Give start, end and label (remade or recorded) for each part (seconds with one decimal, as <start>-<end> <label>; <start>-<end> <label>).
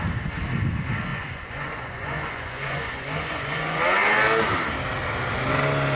0.0-1.1 recorded; 1.1-3.8 remade; 3.8-6.0 recorded